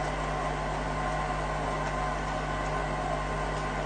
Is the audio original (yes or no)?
yes